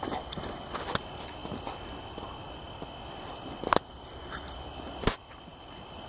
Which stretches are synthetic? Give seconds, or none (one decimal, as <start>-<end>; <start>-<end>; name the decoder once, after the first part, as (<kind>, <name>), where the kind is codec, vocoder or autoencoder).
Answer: none